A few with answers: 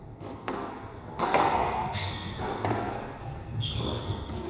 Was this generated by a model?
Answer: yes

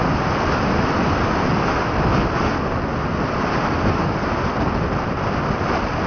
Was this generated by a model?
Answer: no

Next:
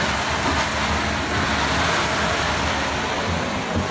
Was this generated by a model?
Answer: no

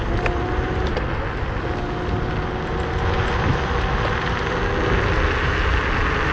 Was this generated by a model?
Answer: no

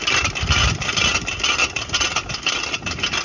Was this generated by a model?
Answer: no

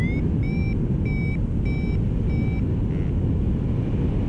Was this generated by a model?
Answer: no